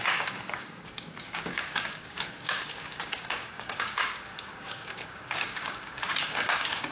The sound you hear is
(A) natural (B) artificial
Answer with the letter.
B